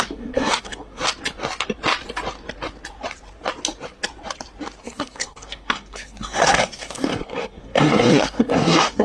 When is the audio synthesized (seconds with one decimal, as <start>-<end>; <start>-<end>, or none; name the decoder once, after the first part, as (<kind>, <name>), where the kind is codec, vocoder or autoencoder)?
0.0-1.0 (codec, SNAC); 4.8-9.0